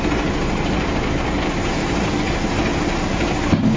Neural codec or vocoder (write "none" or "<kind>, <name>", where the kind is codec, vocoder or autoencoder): none